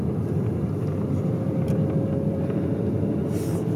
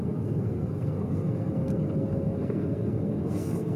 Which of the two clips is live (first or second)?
first